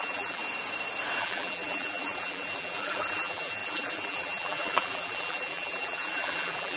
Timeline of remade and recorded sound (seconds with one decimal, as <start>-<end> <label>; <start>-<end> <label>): 0.0-0.4 remade; 0.4-1.2 recorded; 1.2-6.8 remade